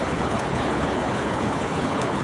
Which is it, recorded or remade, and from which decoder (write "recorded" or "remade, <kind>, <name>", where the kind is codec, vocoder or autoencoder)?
remade, codec, HILCodec